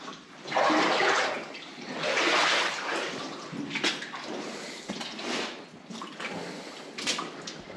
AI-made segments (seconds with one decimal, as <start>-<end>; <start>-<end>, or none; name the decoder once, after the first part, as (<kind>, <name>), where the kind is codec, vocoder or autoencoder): none